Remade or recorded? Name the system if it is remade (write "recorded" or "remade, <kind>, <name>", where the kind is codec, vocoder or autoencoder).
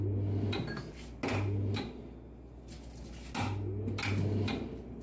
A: recorded